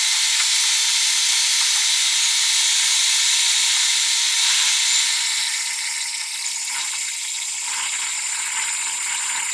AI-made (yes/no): no